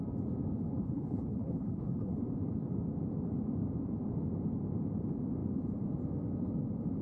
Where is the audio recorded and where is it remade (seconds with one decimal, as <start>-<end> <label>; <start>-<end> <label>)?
0.0-0.8 recorded; 0.8-2.2 remade; 2.2-7.0 recorded

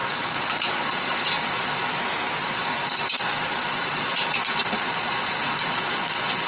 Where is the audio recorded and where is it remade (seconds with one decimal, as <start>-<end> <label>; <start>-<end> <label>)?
0.0-2.0 remade; 2.0-2.4 recorded; 2.4-6.5 remade

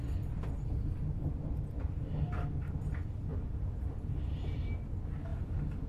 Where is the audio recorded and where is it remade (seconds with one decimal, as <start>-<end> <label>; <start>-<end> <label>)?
0.0-5.9 recorded